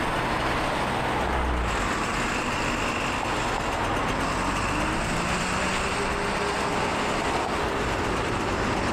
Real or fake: real